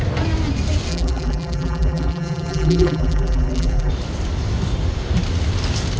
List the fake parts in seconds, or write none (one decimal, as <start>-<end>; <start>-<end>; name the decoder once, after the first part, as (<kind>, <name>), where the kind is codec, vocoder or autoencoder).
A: 0.9-3.9 (vocoder, BigVGAN v2)